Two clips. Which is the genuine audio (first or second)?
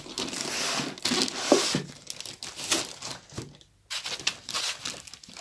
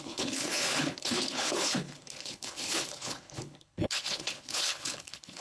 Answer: first